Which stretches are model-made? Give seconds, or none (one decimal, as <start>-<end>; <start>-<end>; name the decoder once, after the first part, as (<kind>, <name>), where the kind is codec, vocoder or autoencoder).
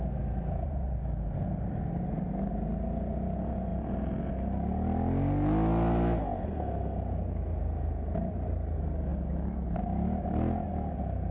none